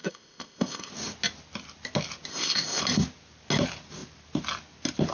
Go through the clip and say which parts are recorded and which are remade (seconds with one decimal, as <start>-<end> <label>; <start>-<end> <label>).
0.0-0.9 remade; 0.9-2.3 recorded; 2.3-2.8 remade; 2.8-5.1 recorded